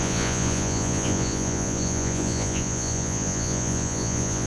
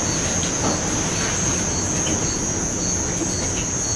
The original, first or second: second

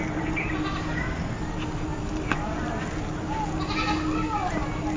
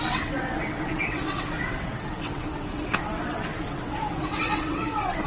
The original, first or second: first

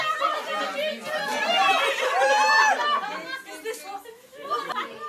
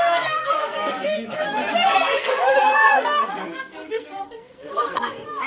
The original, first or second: first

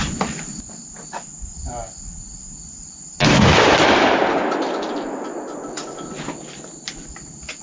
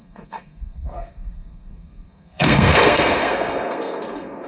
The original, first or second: first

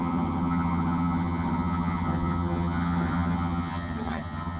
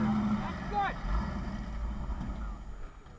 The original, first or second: second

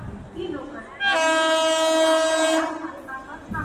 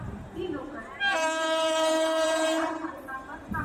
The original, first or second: first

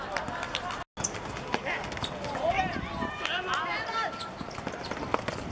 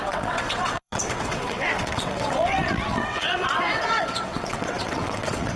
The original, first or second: first